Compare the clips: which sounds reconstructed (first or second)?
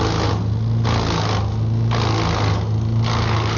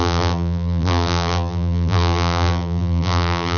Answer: second